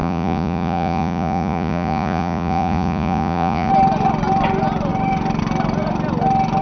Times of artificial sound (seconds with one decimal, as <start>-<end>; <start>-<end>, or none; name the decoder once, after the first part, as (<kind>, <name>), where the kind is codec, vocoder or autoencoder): 0.0-3.7 (vocoder, Vocos)